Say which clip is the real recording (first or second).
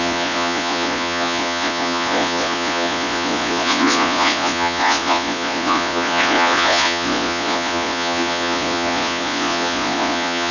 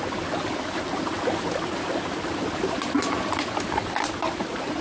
second